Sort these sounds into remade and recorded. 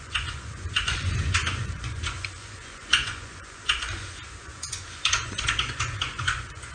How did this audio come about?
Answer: remade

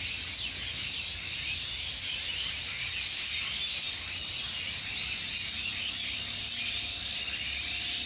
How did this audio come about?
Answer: recorded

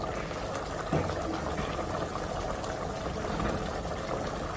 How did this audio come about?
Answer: recorded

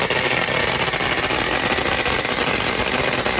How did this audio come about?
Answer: recorded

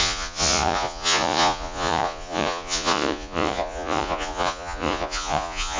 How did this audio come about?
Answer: remade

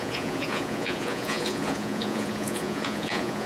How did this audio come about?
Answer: remade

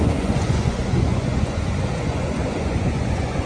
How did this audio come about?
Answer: remade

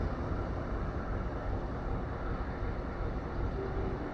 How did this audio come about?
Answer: recorded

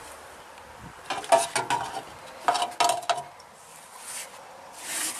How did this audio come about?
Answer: recorded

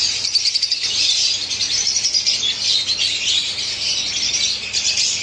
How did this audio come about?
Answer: recorded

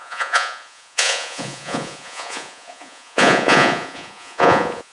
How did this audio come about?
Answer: remade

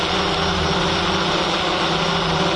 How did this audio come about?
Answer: recorded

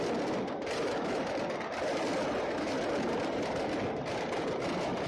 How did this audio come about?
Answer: recorded